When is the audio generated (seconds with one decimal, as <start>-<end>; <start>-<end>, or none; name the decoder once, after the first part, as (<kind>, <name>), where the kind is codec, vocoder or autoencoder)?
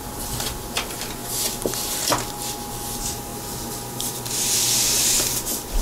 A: none